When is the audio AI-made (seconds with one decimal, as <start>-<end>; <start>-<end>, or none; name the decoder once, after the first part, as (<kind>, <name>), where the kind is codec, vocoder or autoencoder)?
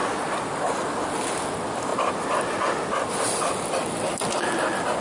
0.0-0.7 (vocoder, BigVGAN v2)